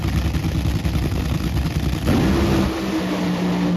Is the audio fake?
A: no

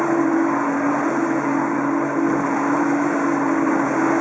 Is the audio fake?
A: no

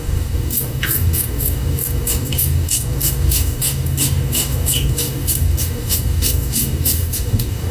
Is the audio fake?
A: yes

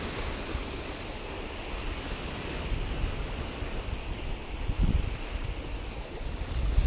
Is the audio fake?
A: no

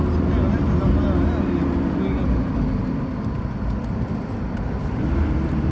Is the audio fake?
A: no